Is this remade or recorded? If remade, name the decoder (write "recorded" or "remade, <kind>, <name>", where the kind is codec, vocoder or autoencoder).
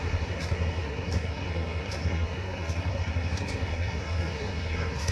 remade, codec, SNAC